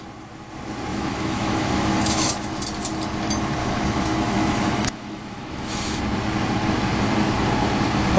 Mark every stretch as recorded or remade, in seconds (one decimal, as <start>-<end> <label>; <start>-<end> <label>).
0.0-0.9 recorded; 0.9-2.6 remade; 2.6-3.6 recorded; 3.6-6.0 remade; 6.0-8.2 recorded

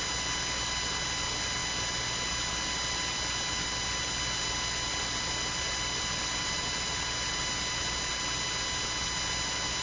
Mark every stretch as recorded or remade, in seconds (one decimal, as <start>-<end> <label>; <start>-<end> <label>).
0.0-9.8 recorded

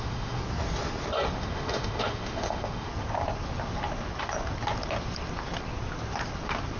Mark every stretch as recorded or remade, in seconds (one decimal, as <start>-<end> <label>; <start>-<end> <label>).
0.0-0.4 remade; 0.4-1.4 recorded; 1.4-2.9 remade; 2.9-6.8 recorded

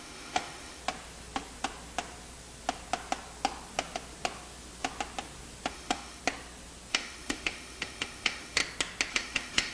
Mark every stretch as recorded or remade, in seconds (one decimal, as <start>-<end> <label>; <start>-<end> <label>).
0.0-0.8 remade; 0.8-5.7 recorded; 5.7-6.2 remade; 6.2-6.9 recorded; 6.9-8.6 remade; 8.6-9.1 recorded; 9.1-9.7 remade